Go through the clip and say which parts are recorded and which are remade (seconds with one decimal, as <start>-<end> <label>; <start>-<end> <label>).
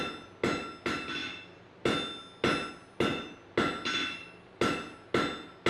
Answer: 0.0-5.7 recorded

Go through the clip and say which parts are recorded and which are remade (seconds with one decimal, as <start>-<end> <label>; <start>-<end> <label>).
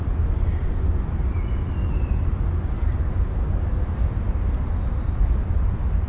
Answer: 0.0-6.1 recorded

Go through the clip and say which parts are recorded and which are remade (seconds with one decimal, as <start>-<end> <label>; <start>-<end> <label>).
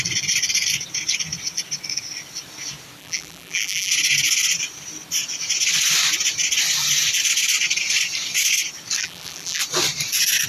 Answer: 0.0-3.0 recorded; 3.0-3.9 remade; 3.9-9.0 recorded; 9.0-9.6 remade; 9.6-10.5 recorded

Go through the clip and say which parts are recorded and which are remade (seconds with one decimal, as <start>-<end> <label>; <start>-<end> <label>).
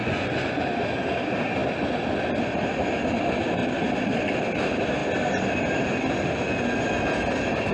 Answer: 0.0-0.6 remade; 0.6-7.7 recorded